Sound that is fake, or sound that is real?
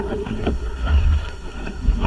fake